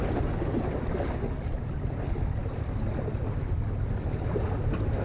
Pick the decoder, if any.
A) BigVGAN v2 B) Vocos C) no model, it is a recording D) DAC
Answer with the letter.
C